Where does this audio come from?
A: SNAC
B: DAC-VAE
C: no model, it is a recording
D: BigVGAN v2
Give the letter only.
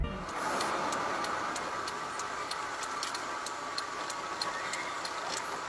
C